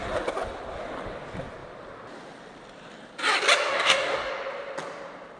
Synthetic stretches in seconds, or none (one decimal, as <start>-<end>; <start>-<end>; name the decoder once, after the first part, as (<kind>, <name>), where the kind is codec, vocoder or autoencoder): 3.7-4.3 (codec, DAC)